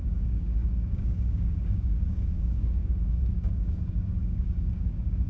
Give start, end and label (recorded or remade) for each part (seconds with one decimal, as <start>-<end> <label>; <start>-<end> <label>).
0.0-5.3 remade